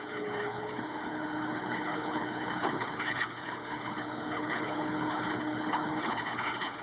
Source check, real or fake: fake